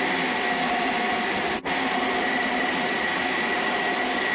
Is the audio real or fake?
real